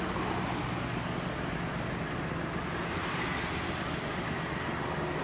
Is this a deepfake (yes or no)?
no